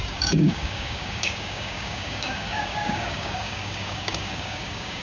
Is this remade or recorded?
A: remade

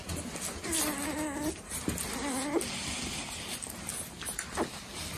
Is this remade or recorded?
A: recorded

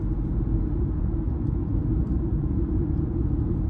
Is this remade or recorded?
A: remade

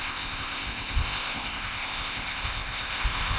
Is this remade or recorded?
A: remade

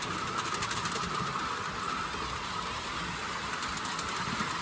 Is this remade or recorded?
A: recorded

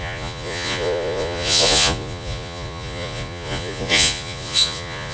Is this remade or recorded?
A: remade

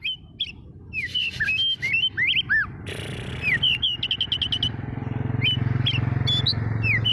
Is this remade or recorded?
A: recorded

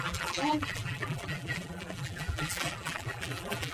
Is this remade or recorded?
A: remade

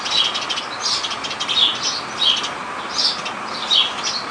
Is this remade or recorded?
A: recorded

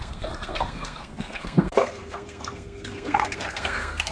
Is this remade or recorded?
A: remade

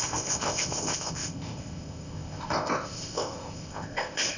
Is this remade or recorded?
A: remade